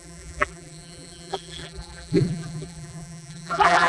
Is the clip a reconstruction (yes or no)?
yes